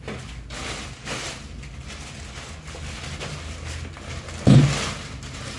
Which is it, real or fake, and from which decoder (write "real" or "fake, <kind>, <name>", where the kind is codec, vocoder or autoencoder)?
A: real